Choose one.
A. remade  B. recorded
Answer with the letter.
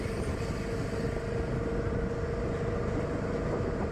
B